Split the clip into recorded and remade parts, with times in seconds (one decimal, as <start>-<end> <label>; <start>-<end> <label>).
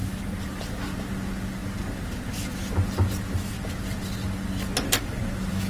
0.0-0.8 remade; 0.8-5.7 recorded